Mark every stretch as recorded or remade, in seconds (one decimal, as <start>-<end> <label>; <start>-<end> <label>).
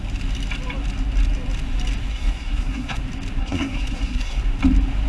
0.0-2.1 recorded; 2.1-3.0 remade; 3.0-3.4 recorded; 3.4-4.4 remade; 4.4-5.1 recorded